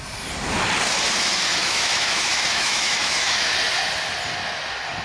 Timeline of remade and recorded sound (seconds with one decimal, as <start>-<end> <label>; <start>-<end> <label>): 0.0-1.5 recorded; 1.5-3.5 remade; 3.5-5.0 recorded